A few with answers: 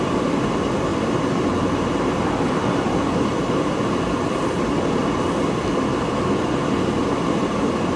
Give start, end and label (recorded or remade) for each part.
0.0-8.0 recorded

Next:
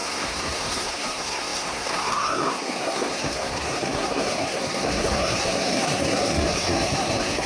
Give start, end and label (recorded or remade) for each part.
0.0-7.5 remade

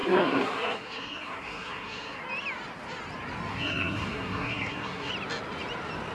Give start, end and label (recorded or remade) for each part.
0.0-2.2 remade; 2.2-3.5 recorded; 3.5-5.1 remade; 5.1-6.1 recorded

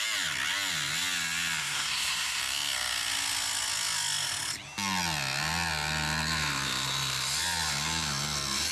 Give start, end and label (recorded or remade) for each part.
0.0-1.6 recorded; 1.6-2.4 remade; 2.4-8.7 recorded

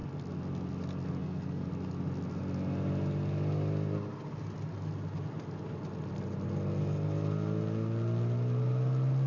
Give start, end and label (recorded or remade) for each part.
0.0-1.2 recorded; 1.2-1.7 remade; 1.7-9.3 recorded

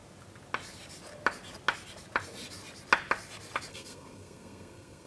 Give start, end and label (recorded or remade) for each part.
0.0-3.7 recorded; 3.7-5.1 remade